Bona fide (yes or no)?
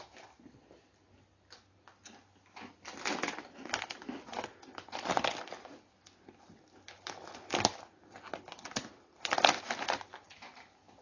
yes